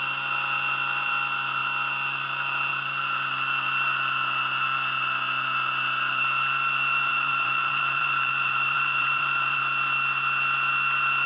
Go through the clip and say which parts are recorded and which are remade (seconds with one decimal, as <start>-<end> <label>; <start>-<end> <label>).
0.0-7.1 recorded; 7.1-9.6 remade; 9.6-11.3 recorded